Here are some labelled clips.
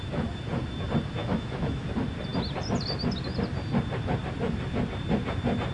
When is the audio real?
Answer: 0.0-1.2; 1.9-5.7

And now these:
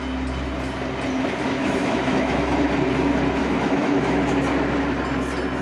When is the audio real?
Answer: 0.0-1.6; 2.7-3.4; 4.3-5.6